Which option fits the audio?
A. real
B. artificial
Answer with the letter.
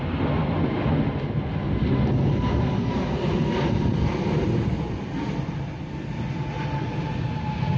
A